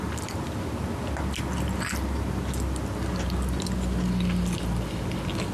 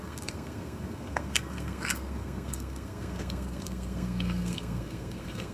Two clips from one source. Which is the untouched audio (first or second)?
first